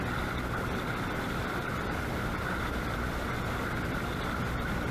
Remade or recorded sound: recorded